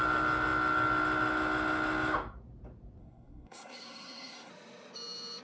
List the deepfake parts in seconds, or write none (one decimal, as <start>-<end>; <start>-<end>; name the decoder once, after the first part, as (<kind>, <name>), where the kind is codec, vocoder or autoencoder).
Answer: 3.0-4.5 (codec, SNAC)